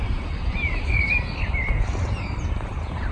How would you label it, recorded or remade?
remade